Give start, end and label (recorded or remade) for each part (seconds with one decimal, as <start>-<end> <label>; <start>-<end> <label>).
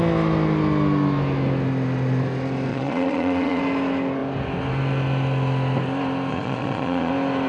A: 0.0-2.7 recorded; 2.7-3.6 remade; 3.6-6.3 recorded; 6.3-7.1 remade; 7.1-7.5 recorded